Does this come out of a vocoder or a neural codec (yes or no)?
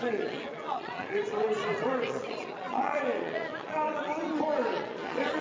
yes